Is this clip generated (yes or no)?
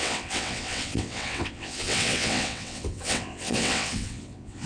yes